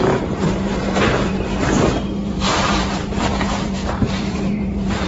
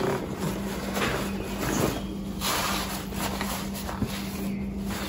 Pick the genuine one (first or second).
second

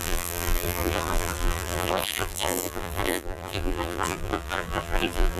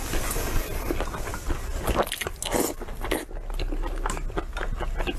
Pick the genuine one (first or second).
second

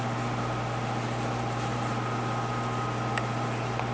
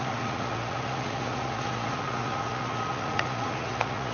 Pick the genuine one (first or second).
first